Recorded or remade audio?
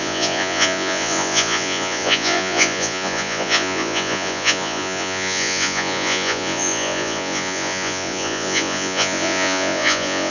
remade